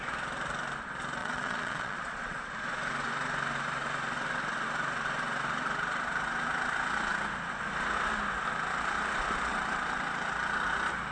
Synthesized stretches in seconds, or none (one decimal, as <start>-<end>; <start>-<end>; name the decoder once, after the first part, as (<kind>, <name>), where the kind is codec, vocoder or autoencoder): 1.2-2.4 (vocoder, Vocos)